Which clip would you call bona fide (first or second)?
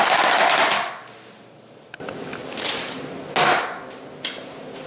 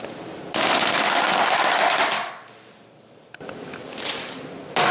first